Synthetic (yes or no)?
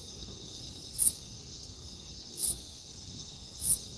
yes